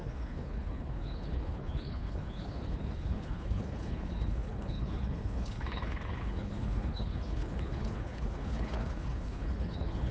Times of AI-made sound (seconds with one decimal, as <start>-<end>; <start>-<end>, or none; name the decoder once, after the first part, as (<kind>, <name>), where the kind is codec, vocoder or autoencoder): 0.0-10.1 (codec, HILCodec)